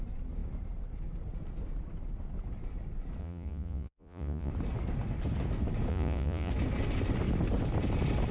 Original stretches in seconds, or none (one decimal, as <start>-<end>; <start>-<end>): 0.0-3.2; 4.5-5.9; 6.5-8.3